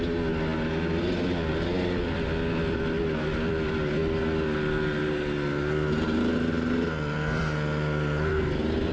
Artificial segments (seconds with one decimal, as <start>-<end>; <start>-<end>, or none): none